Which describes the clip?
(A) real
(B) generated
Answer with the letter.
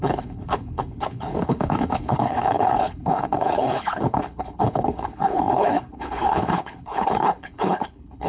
B